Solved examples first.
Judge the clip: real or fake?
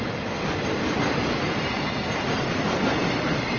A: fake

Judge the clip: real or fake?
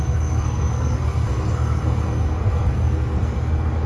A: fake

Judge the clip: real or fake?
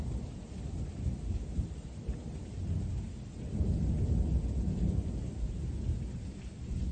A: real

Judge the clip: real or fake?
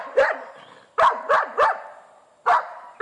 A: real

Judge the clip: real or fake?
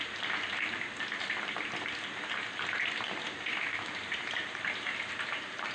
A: fake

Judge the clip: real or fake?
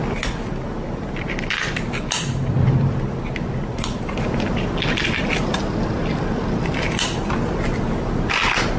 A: real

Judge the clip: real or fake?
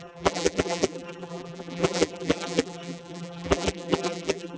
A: fake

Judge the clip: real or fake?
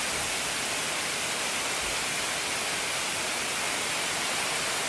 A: real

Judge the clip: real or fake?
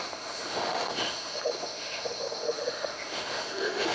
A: fake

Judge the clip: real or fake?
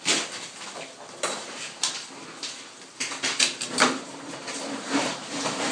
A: real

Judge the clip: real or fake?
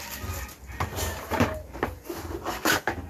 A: real